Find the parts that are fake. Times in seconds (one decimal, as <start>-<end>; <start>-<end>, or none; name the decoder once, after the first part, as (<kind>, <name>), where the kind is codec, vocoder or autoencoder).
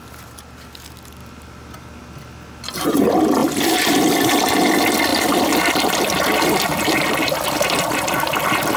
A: 3.4-4.0 (vocoder, BigVGAN v2)